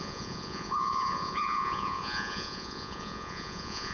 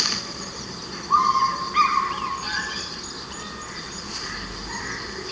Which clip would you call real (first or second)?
second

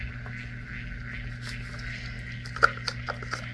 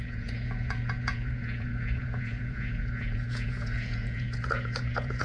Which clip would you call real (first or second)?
first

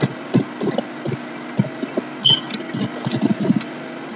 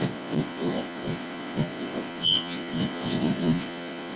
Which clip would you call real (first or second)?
first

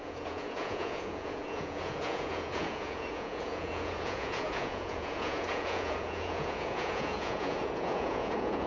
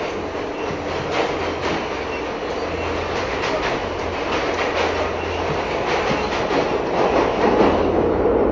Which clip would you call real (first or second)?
second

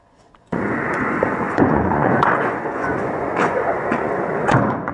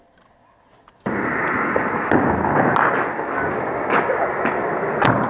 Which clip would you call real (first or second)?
second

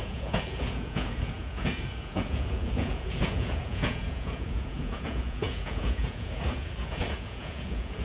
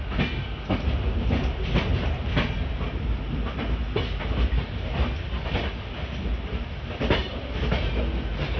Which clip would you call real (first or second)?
second